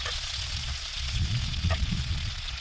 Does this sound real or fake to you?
fake